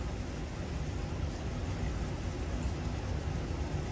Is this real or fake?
real